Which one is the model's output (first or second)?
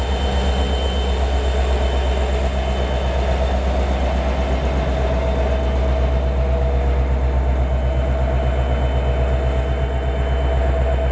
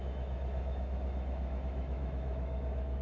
second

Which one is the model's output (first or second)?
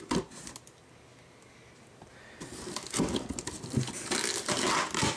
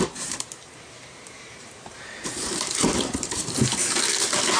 second